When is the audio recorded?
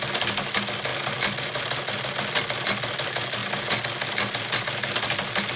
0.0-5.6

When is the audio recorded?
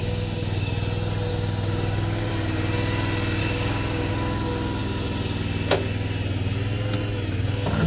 0.7-1.3; 2.3-3.4; 4.1-7.9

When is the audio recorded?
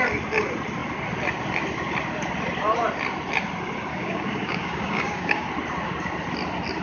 0.0-3.9; 5.5-6.8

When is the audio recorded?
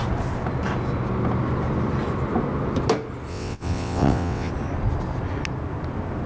0.0-3.3; 4.5-6.3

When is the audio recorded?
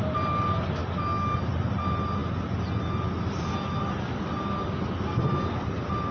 0.0-6.1